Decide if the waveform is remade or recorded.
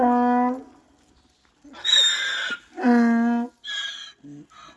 recorded